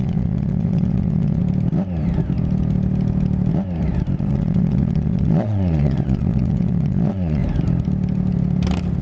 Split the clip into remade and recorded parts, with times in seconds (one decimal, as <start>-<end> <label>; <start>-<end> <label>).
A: 0.0-1.4 remade; 1.4-4.2 recorded; 4.2-7.4 remade; 7.4-9.0 recorded

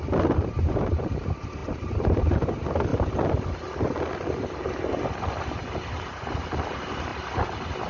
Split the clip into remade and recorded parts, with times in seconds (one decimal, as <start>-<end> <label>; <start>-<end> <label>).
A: 0.0-2.9 remade; 2.9-5.3 recorded; 5.3-7.1 remade; 7.1-7.9 recorded

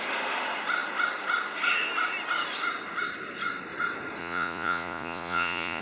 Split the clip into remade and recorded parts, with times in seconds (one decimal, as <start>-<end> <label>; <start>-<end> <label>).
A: 0.0-4.2 recorded; 4.2-5.8 remade

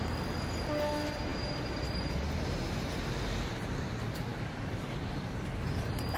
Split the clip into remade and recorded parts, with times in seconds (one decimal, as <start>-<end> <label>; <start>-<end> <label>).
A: 0.0-1.3 recorded; 1.3-3.8 remade; 3.8-4.3 recorded; 4.3-6.2 remade